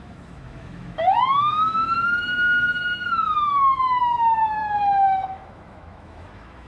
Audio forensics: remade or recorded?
remade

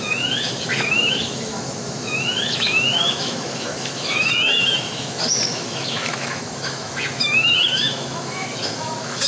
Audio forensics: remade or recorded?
remade